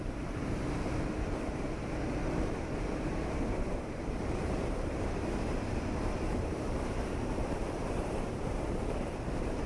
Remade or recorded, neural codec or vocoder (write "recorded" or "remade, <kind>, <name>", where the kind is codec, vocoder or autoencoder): remade, vocoder, BigVGAN v2